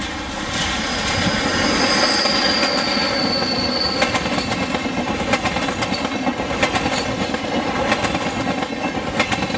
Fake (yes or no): no